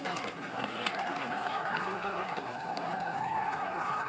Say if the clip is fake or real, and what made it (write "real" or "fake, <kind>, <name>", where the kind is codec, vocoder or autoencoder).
fake, codec, SNAC